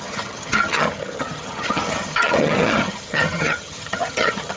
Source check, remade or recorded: remade